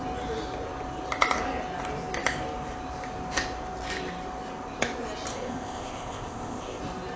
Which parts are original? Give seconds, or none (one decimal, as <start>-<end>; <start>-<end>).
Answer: 0.0-5.3; 6.8-7.2